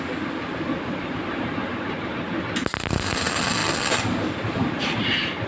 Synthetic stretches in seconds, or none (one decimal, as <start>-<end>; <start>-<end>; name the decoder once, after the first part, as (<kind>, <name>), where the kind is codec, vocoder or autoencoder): none

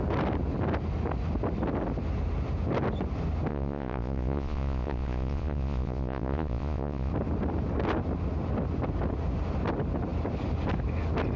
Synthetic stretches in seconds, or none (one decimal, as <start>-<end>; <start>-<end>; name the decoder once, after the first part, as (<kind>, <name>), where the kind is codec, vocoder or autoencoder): 3.5-7.1 (vocoder, Vocos)

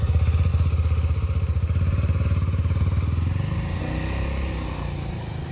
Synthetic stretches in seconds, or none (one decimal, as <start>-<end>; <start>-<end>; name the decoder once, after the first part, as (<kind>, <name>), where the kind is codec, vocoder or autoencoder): none

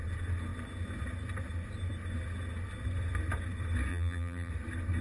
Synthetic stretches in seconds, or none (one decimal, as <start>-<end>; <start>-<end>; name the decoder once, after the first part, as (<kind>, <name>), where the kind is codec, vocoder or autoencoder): 3.9-4.5 (vocoder, BigVGAN v2)

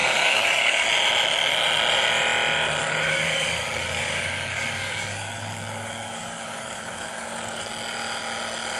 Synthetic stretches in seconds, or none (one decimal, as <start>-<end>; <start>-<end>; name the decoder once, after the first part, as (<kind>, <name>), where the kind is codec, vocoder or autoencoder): 0.0-0.9 (codec, DAC); 2.8-7.7

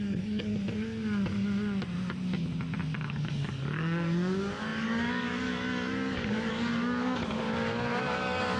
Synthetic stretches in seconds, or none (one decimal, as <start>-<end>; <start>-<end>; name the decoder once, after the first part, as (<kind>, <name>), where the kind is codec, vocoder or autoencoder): 0.0-0.5 (codec, DAC); 3.1-8.6